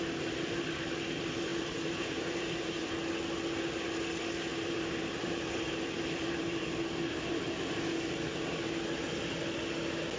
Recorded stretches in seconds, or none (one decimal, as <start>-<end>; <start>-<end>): 0.0-1.5; 2.9-4.5; 6.6-10.2